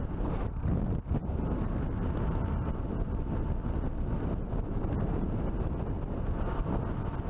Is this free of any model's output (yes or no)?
yes